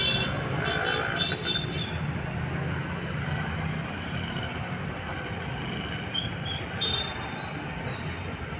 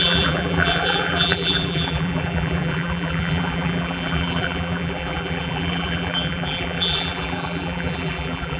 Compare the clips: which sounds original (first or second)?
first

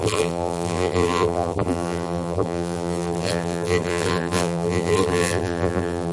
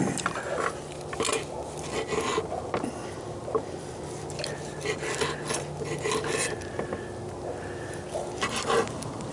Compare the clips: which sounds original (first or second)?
second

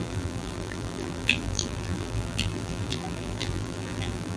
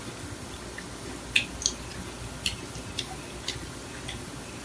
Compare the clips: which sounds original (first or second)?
second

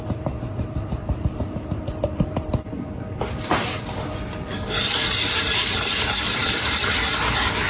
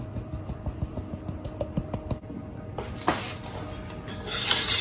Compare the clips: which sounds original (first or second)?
second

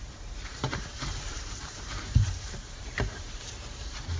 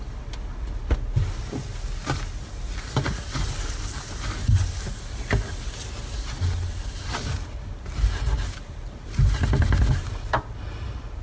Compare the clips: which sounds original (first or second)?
second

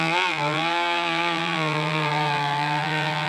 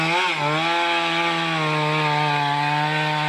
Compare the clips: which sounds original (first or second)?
second